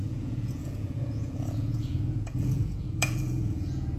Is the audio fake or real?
fake